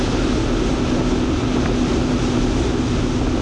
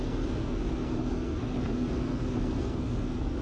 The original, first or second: first